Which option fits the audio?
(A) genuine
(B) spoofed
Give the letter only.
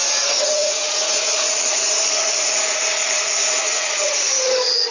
B